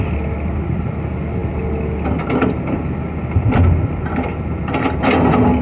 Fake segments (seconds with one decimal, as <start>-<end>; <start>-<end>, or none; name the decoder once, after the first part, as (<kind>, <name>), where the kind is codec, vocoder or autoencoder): none